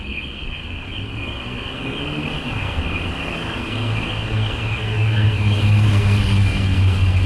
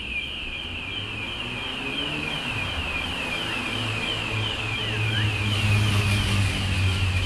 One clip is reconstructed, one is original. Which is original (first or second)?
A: second